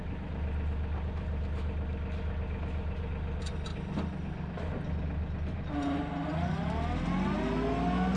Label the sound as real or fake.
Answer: real